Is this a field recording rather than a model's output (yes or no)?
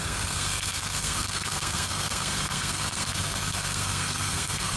no